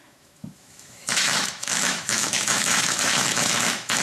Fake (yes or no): yes